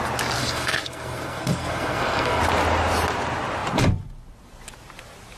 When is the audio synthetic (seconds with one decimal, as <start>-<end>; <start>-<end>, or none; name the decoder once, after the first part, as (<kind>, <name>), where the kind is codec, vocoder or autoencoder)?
0.4-2.4 (codec, SNAC)